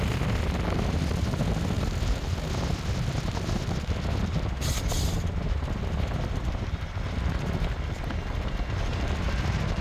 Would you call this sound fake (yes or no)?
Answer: no